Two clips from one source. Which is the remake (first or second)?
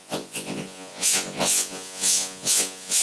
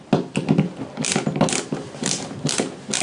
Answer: first